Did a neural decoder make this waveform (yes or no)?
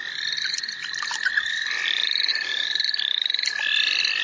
no